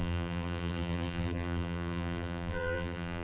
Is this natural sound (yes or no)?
no